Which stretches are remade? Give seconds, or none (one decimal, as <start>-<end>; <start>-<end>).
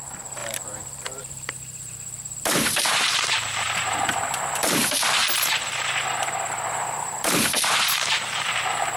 0.0-5.2; 6.7-9.0